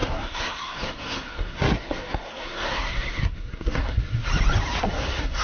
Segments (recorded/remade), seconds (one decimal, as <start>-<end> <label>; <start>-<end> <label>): 0.0-4.3 remade; 4.3-4.8 recorded; 4.8-5.4 remade